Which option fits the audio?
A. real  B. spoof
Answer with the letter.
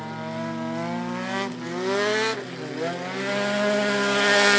A